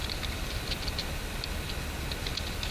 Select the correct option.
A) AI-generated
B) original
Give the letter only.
B